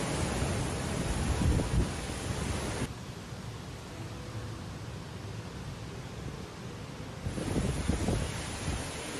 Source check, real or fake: real